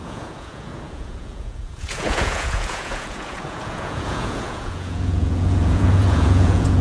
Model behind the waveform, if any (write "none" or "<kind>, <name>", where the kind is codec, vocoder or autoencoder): vocoder, Vocos